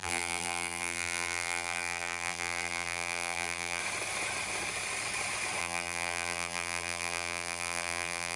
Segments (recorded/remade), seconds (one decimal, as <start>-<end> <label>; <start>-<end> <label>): 0.0-3.8 remade; 3.8-5.6 recorded; 5.6-8.4 remade